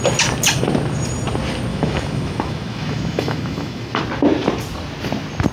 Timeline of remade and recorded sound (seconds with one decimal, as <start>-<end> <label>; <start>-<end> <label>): 0.0-1.7 recorded; 1.7-4.0 remade; 4.0-5.5 recorded